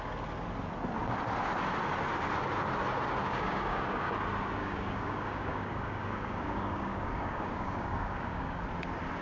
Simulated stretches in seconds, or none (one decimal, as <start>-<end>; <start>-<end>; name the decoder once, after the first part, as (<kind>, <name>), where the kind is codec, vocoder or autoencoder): 3.2-4.1 (codec, DAC); 4.6-8.6